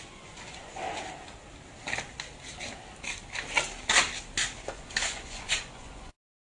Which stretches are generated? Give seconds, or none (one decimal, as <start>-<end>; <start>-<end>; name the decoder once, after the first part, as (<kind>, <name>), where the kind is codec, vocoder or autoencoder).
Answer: 0.0-0.8 (vocoder, Vocos); 4.6-6.6